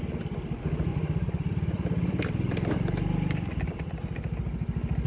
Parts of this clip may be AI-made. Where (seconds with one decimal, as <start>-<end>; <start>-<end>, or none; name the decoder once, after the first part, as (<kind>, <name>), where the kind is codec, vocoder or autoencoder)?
0.9-4.0 (vocoder, BigVGAN v2)